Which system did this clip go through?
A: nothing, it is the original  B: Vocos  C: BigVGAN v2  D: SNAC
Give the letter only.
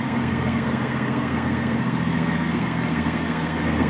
D